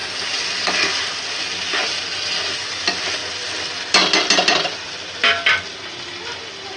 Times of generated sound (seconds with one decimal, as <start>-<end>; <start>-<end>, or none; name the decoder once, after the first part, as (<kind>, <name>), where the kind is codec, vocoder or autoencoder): none